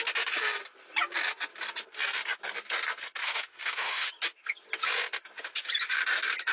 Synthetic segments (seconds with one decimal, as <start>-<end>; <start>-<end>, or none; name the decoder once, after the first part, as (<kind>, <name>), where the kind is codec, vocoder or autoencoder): 3.2-4.1 (autoencoder, DAC-VAE)